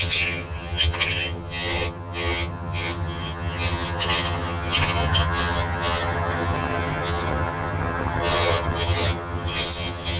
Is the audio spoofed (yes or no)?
yes